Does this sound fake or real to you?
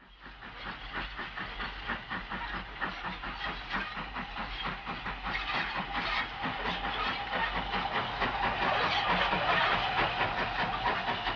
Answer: real